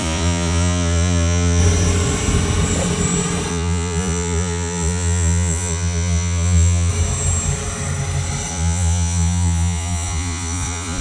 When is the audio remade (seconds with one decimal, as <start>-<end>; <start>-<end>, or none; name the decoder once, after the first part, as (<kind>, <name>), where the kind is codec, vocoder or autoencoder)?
0.0-1.6 (vocoder, Vocos); 3.5-6.9; 8.5-11.0